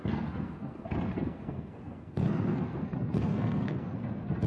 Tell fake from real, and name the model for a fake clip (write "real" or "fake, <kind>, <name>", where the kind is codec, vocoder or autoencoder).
fake, codec, SNAC